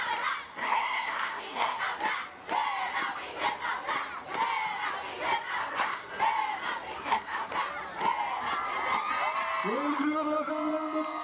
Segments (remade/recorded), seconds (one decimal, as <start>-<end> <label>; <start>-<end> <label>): 0.0-0.5 recorded; 0.5-1.8 remade; 1.8-5.6 recorded; 5.6-6.2 remade; 6.2-7.0 recorded; 7.0-7.5 remade; 7.5-9.9 recorded; 9.9-10.5 remade; 10.5-11.2 recorded